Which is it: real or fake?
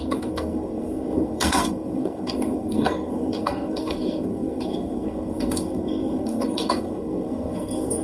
fake